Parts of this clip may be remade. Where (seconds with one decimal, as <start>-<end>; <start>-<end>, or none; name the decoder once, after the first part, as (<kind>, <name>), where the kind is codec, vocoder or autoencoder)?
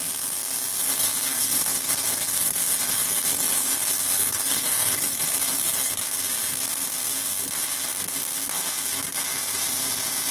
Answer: 0.8-5.9 (codec, SNAC)